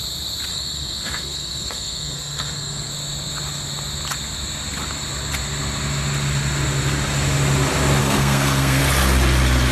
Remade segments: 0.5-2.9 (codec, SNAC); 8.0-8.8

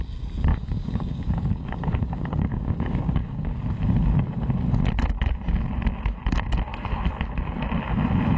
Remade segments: 0.5-3.6 (codec, DAC)